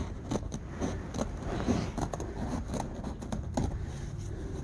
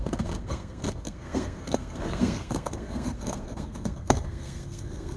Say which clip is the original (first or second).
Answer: first